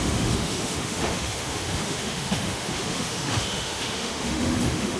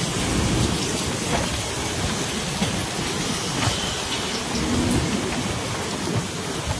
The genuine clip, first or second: second